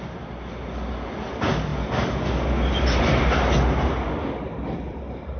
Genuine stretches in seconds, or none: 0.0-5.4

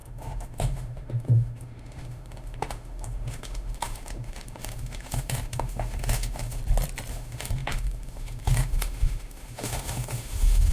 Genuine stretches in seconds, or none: 6.6-7.1

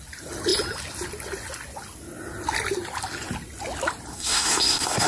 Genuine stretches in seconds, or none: 0.0-4.1

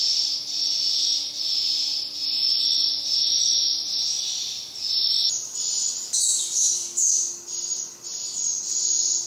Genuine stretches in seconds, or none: 0.0-2.2; 6.7-8.1; 8.7-9.3

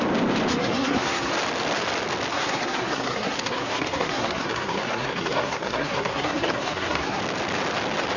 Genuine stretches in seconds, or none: 0.0-0.5; 1.3-2.3; 7.2-8.2

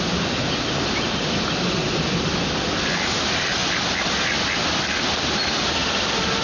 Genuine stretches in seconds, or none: 0.0-6.4

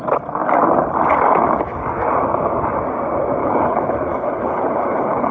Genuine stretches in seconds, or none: 0.0-3.4

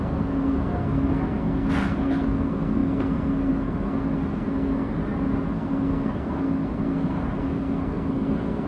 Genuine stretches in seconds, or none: 5.0-5.5